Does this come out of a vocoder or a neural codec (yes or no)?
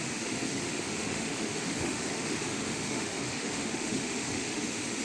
yes